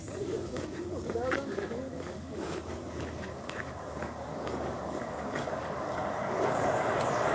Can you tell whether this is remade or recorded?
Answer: remade